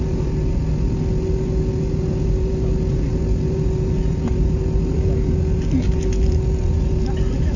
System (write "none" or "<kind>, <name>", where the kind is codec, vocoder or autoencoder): none